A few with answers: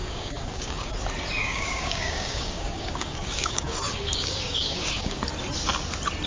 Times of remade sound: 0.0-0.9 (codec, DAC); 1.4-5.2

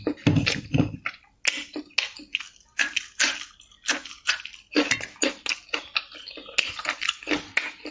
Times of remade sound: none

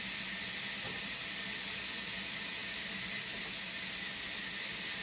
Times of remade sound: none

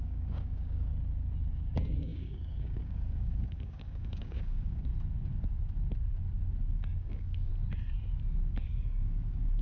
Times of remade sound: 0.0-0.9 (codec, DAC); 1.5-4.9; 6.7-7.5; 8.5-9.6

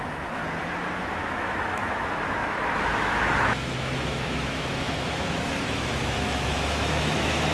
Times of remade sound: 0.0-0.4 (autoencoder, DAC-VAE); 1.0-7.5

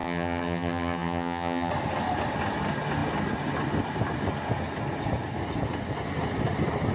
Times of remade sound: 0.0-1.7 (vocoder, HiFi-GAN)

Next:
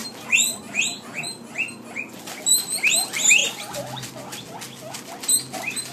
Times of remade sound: none